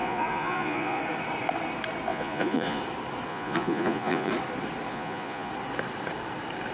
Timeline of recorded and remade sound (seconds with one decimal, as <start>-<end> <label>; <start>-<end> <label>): 0.0-1.0 remade; 1.0-2.1 recorded; 2.1-2.8 remade; 2.8-3.3 recorded; 3.3-4.3 remade; 4.3-4.9 recorded; 4.9-5.5 remade; 5.5-6.7 recorded

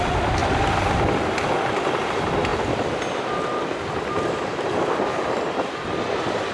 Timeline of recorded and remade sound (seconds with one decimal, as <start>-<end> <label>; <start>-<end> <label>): 0.0-0.4 remade; 0.4-1.7 recorded; 1.7-6.5 remade

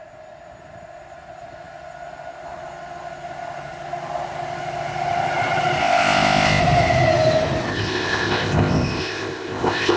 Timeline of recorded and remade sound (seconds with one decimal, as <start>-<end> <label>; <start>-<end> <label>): 0.0-5.8 recorded; 5.8-6.6 remade; 6.6-7.7 recorded; 7.7-10.0 remade

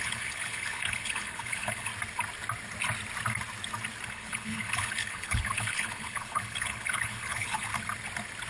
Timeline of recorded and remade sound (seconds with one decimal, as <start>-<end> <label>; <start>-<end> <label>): 0.0-1.9 remade; 1.9-4.1 recorded; 4.1-7.7 remade; 7.7-8.5 recorded

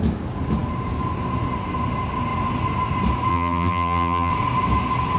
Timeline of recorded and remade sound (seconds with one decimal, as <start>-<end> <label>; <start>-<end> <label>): 0.0-3.3 recorded; 3.3-4.3 remade; 4.3-5.2 recorded